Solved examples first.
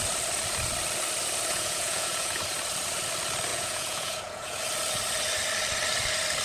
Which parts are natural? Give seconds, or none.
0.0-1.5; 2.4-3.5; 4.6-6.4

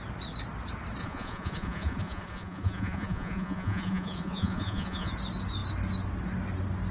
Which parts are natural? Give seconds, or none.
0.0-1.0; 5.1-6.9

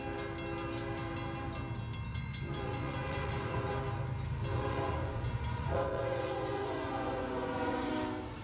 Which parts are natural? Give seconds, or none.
0.0-2.1; 3.8-4.5; 7.9-8.4

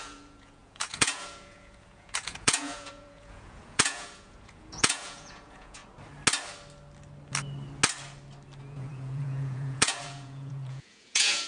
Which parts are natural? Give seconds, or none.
5.8-8.6

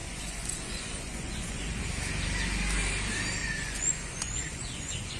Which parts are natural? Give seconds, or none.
1.8-3.4

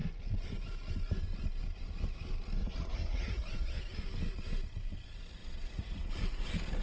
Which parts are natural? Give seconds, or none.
0.0-2.6; 3.8-5.4; 6.1-6.8

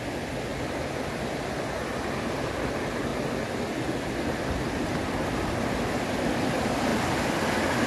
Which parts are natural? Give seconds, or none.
0.0-7.9